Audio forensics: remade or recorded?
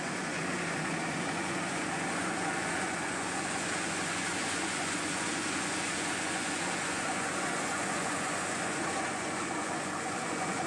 remade